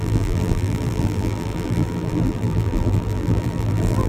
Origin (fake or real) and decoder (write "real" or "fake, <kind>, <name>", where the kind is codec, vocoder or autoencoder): fake, vocoder, BigVGAN v2